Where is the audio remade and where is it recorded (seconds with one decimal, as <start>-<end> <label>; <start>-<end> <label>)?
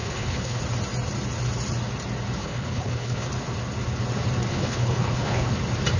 0.0-0.6 remade; 0.6-2.4 recorded; 2.4-3.3 remade; 3.3-4.5 recorded; 4.5-5.5 remade; 5.5-6.0 recorded